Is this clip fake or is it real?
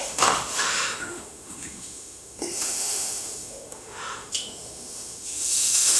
fake